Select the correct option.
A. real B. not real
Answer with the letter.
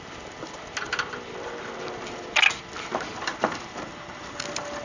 A